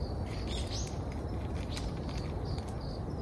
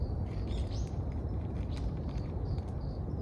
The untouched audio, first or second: first